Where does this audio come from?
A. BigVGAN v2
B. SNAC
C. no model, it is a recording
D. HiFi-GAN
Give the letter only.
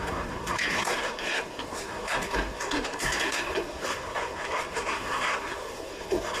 B